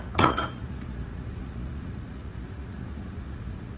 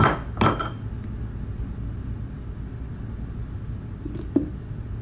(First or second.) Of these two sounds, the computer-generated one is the first